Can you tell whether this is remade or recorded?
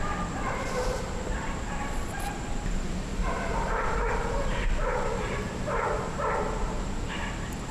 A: remade